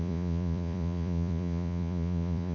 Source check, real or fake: fake